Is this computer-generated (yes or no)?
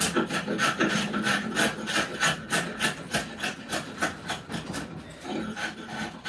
no